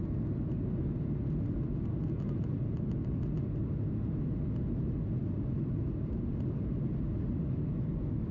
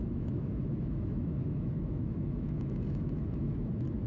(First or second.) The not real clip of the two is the second